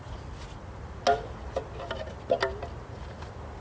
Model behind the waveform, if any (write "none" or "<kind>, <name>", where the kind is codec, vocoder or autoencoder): none